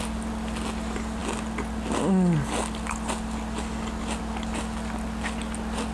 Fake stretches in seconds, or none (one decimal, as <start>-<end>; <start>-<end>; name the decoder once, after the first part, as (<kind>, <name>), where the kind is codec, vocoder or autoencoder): none